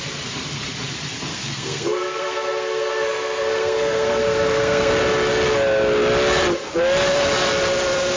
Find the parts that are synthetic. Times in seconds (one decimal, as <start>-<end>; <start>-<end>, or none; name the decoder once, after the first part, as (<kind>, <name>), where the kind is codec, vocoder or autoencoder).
1.3-4.9 (codec, SNAC)